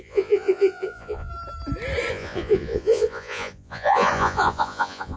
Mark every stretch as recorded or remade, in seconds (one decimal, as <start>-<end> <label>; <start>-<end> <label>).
0.0-1.3 remade; 1.3-2.1 recorded; 2.1-5.2 remade